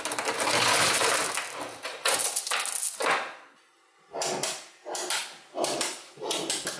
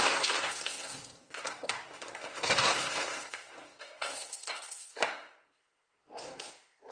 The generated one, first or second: second